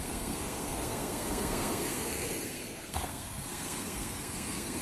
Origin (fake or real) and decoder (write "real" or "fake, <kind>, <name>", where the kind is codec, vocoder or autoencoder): fake, codec, SNAC